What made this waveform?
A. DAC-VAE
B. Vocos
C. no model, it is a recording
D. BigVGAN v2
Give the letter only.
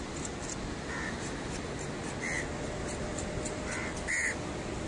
C